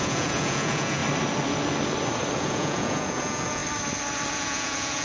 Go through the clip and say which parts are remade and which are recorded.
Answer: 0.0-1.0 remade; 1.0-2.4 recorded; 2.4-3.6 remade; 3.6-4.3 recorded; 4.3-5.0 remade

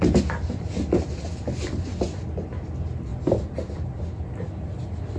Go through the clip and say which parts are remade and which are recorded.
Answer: 0.0-5.2 recorded

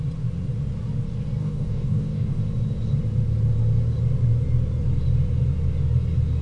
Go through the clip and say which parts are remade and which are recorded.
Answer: 0.0-1.4 recorded; 1.4-2.4 remade; 2.4-6.4 recorded

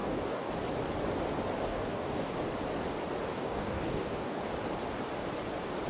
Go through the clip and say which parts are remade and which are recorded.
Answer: 0.0-0.5 remade; 0.5-1.7 recorded; 1.7-2.3 remade; 2.3-3.3 recorded; 3.3-4.4 remade; 4.4-5.9 recorded